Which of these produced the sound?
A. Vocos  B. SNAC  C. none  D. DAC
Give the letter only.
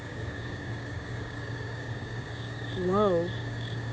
D